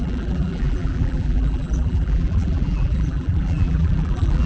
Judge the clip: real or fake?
fake